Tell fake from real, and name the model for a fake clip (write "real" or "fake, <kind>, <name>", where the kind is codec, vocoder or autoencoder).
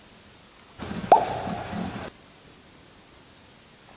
real